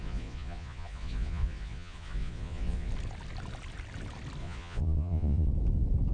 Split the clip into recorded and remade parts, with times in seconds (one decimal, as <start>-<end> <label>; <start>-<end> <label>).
0.0-2.9 remade; 2.9-4.4 recorded; 4.4-5.5 remade; 5.5-6.1 recorded